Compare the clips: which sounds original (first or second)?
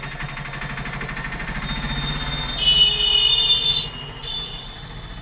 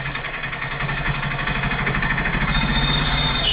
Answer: first